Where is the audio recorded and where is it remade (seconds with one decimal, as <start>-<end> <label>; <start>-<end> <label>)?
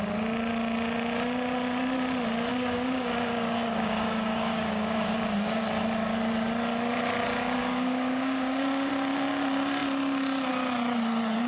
0.0-2.5 recorded; 2.5-5.1 remade; 5.1-7.6 recorded; 7.6-8.9 remade; 8.9-11.5 recorded